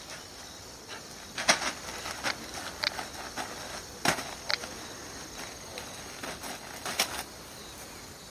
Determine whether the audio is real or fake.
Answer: real